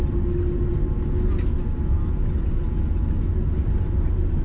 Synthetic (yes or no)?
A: no